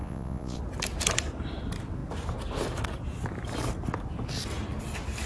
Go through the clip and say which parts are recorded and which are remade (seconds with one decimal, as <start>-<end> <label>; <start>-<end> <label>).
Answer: 0.0-0.6 remade; 0.6-5.3 recorded

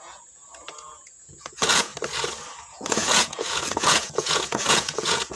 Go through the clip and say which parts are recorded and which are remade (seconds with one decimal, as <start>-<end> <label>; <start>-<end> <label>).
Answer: 0.0-1.9 remade; 1.9-2.6 recorded; 2.6-5.4 remade

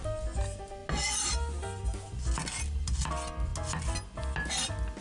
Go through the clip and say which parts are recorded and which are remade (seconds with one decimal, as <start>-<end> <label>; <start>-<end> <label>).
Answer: 0.0-5.0 recorded

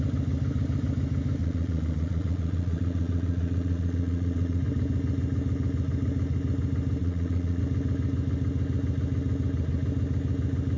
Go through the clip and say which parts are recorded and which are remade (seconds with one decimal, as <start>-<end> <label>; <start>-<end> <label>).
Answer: 0.0-1.4 recorded; 1.4-4.6 remade; 4.6-7.0 recorded; 7.0-7.6 remade; 7.6-10.8 recorded

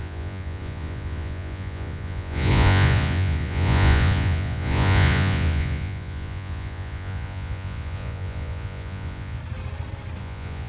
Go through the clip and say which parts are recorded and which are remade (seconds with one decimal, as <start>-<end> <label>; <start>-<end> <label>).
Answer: 0.0-9.4 remade; 9.4-10.2 recorded; 10.2-10.7 remade

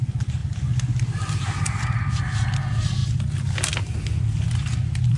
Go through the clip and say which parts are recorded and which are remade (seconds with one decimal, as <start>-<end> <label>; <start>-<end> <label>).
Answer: 0.0-5.2 recorded